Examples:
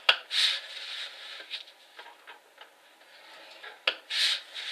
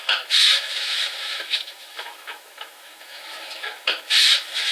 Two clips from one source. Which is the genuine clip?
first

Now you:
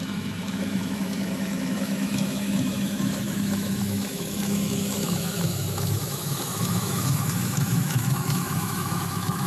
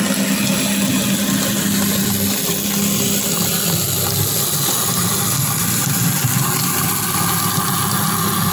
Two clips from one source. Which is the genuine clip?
second